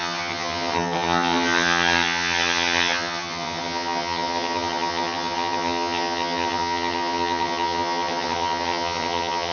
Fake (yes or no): yes